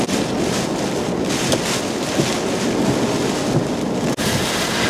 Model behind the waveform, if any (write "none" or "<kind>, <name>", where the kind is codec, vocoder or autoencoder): none